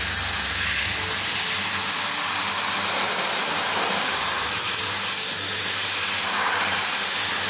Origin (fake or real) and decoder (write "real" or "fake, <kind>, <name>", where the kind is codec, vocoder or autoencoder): real